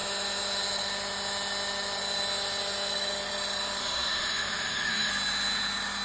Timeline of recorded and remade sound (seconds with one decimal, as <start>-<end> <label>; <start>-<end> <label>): 0.0-3.8 recorded; 3.8-5.1 remade; 5.1-6.0 recorded